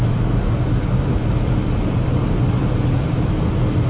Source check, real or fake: real